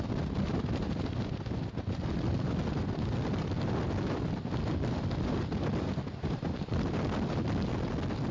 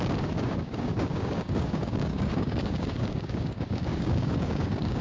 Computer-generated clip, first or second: second